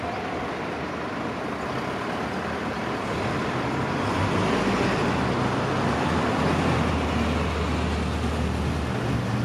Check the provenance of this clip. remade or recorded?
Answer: recorded